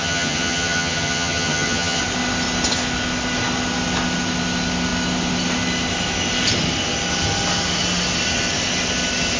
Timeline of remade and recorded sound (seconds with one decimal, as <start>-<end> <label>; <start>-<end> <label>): 0.0-2.0 remade; 2.0-9.4 recorded

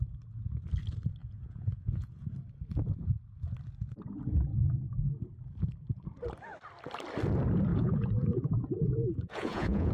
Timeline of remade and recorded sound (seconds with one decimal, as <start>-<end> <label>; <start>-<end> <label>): 0.0-1.2 recorded; 1.2-2.3 remade; 2.3-7.7 recorded; 7.7-9.9 remade

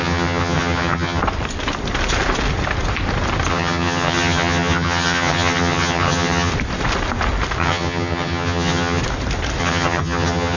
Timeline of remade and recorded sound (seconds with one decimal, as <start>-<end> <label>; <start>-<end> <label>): 0.0-1.2 remade; 1.2-3.5 recorded; 3.5-6.5 remade; 6.5-7.6 recorded; 7.6-9.0 remade; 9.0-9.6 recorded; 9.6-10.6 remade

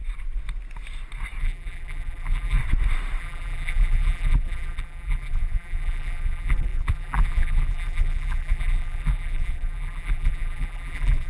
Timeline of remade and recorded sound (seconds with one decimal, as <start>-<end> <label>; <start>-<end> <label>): 0.0-1.4 recorded; 1.4-2.6 remade; 2.6-3.2 recorded; 3.2-11.3 remade

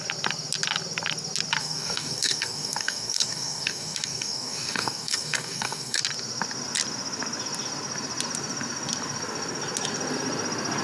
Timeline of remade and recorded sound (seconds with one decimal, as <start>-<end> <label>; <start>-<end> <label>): 0.0-1.6 recorded; 1.6-6.0 remade; 6.0-10.8 recorded

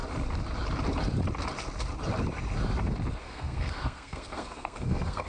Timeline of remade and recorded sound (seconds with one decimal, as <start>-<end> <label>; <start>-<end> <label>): 0.0-3.2 recorded; 3.2-5.3 remade

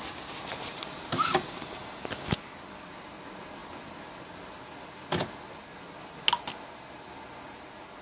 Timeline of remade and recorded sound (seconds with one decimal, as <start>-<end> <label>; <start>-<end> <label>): 0.0-8.0 recorded

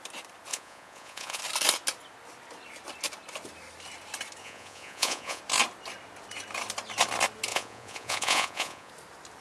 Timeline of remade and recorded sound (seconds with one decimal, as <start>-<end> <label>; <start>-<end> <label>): 0.0-0.5 recorded; 0.5-1.4 remade; 1.4-4.4 recorded; 4.4-5.4 remade; 5.4-7.5 recorded; 7.5-8.9 remade; 8.9-9.4 recorded